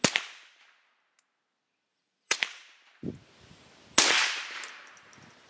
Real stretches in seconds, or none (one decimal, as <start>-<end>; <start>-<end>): 0.0-1.9; 2.6-5.5